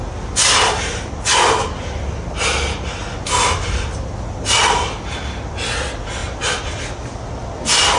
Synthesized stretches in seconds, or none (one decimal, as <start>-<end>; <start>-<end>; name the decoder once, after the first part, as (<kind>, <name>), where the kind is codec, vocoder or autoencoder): none